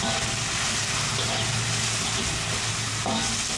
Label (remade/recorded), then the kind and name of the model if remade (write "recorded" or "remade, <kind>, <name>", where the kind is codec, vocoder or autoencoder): recorded